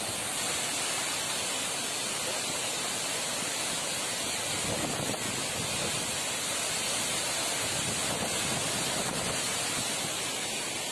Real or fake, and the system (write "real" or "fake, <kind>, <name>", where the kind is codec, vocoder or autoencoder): real